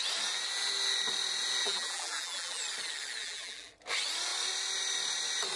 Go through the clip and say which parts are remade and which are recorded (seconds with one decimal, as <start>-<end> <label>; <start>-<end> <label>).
0.0-1.6 recorded; 1.6-2.6 remade; 2.6-3.2 recorded; 3.2-3.7 remade; 3.7-5.6 recorded